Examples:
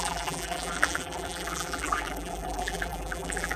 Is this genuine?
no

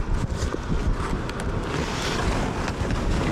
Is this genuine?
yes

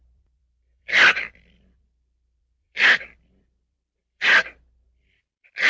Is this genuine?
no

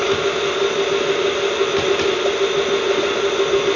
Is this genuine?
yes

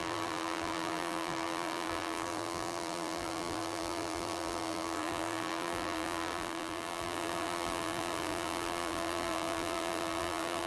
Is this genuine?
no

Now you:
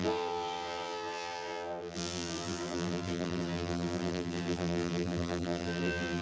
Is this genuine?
no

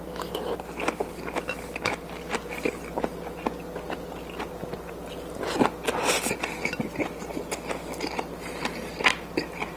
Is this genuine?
yes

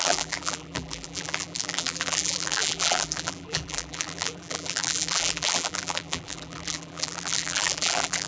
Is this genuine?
no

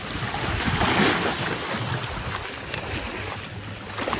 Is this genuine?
yes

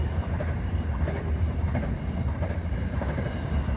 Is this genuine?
no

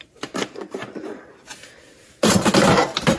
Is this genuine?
no